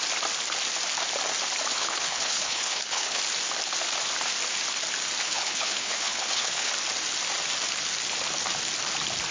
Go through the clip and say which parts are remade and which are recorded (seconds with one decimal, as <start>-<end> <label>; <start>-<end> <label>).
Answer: 0.0-1.7 recorded; 1.7-3.2 remade; 3.2-5.2 recorded; 5.2-6.7 remade; 6.7-9.3 recorded